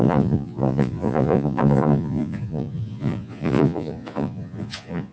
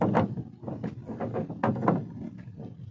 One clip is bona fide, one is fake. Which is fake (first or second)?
first